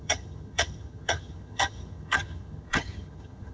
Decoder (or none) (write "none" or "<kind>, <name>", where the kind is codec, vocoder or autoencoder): vocoder, HiFi-GAN